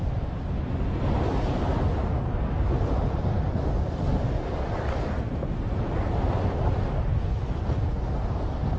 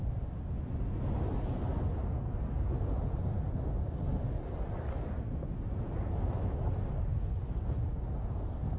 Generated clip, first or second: first